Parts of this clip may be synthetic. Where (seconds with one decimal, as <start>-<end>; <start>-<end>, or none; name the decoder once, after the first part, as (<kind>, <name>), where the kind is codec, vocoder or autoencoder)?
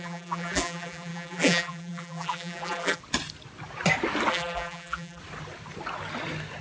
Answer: 0.0-3.0 (vocoder, BigVGAN v2); 4.3-5.2